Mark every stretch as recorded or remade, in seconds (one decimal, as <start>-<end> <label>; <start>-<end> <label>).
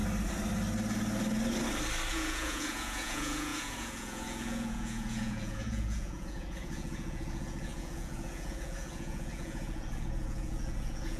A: 0.0-2.1 recorded; 2.1-11.2 remade